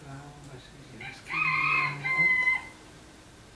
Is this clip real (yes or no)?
yes